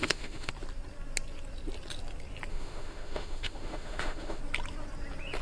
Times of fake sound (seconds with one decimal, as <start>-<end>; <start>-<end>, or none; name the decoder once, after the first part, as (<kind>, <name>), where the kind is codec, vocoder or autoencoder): 0.0-0.5 (autoencoder, DAC-VAE); 2.5-4.4